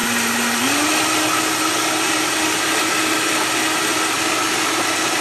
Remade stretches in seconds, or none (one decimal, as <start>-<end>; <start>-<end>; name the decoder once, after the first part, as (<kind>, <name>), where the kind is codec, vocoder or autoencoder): none